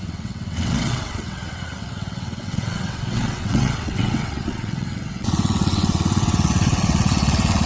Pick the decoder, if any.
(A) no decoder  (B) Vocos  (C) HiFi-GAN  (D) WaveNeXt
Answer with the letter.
D